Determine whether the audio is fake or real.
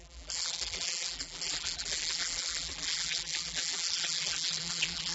fake